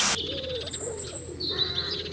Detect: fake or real real